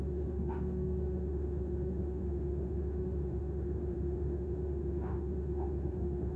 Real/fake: fake